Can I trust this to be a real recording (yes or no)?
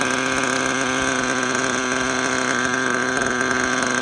yes